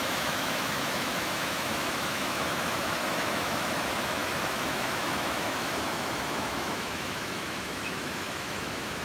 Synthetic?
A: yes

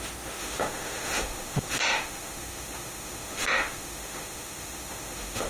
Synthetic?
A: yes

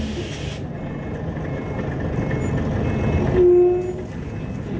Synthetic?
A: no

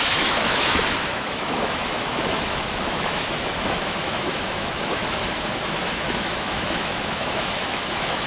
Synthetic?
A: yes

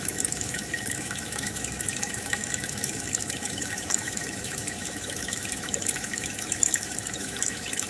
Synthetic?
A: yes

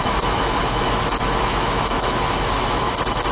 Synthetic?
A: yes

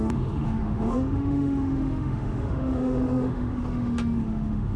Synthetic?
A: yes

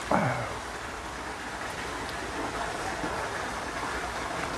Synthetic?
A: no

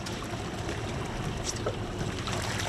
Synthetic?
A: no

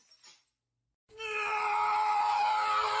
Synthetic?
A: no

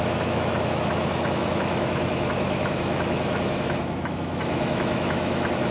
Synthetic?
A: yes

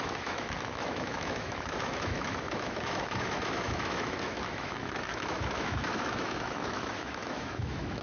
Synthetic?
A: yes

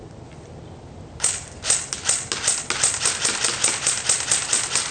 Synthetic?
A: no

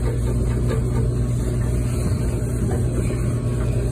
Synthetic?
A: no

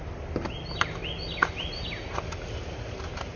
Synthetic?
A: no